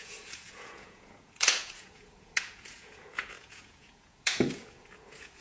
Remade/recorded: remade